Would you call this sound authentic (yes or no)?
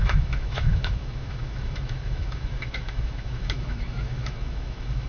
no